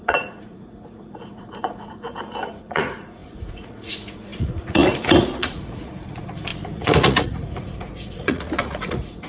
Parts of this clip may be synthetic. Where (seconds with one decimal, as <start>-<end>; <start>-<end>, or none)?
0.0-2.1; 2.6-9.3